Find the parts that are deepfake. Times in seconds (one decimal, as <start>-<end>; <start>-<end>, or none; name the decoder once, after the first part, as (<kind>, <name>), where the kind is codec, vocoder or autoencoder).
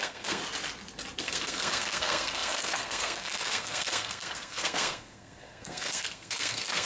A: 0.0-0.4 (codec, SNAC); 1.2-6.9